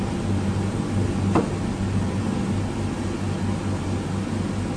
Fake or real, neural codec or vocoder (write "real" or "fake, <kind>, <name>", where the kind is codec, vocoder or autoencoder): real